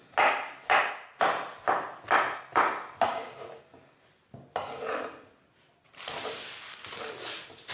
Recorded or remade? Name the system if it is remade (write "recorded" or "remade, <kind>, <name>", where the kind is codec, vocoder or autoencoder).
recorded